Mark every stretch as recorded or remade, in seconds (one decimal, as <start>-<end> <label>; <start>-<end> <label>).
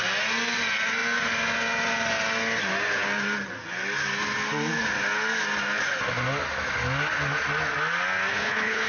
0.0-8.3 recorded; 8.3-8.9 remade